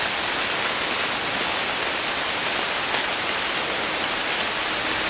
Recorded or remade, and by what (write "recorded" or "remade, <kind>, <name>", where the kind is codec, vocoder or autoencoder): recorded